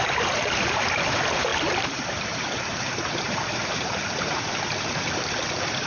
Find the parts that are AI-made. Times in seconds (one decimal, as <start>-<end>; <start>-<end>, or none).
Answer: 1.5-4.6